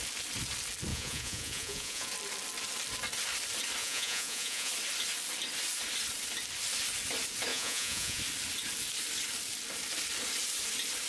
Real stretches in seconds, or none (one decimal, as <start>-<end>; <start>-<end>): 0.0-0.9; 2.1-3.8; 4.7-7.5; 8.2-11.1